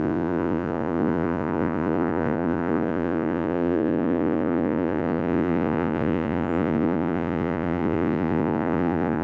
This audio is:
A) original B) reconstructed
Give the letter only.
B